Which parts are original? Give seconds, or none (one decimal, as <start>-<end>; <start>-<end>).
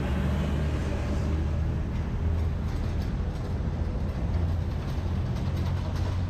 0.0-6.3